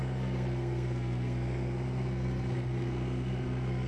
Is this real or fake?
fake